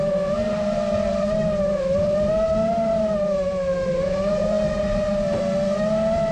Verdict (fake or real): real